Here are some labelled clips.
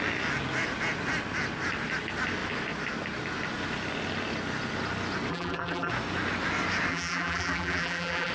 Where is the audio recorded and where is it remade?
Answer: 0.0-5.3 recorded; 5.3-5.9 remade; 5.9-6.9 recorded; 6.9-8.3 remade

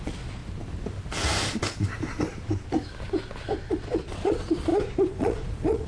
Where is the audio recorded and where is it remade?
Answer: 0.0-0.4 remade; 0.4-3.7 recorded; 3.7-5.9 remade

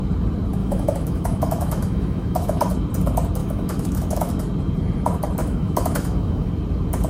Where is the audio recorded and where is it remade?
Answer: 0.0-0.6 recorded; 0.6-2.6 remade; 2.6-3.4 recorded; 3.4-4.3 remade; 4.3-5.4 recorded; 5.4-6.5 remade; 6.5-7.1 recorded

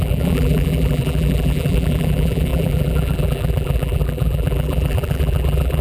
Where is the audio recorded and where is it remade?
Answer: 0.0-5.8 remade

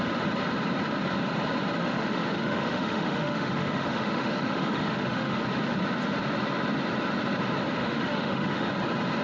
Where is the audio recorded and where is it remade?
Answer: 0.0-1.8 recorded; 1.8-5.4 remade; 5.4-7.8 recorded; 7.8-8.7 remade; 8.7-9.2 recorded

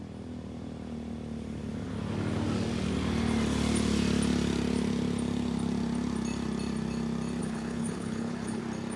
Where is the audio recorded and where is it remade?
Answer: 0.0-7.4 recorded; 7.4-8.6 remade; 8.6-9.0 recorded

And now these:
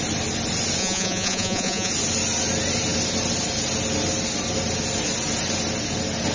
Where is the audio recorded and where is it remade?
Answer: 0.0-0.8 recorded; 0.8-1.9 remade; 1.9-6.3 recorded

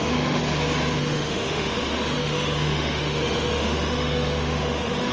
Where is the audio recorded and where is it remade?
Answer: 0.0-0.4 remade; 0.4-1.0 recorded; 1.0-5.1 remade